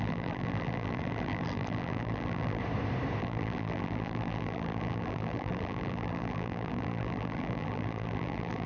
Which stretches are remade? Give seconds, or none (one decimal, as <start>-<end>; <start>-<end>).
0.0-2.6; 3.2-8.7